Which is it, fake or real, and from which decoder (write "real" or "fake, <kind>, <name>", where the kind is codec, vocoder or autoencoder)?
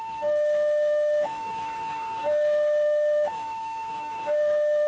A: fake, autoencoder, DAC-VAE